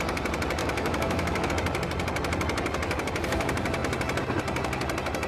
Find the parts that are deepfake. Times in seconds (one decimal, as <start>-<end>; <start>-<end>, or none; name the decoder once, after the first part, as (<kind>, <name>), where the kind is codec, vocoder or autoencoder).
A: 0.6-1.5 (autoencoder, DAC-VAE)